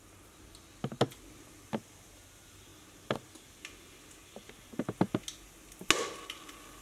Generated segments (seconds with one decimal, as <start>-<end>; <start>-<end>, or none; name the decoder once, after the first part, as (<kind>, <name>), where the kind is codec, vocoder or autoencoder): none